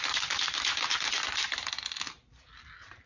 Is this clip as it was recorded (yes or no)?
yes